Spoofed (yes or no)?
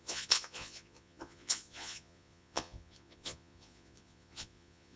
yes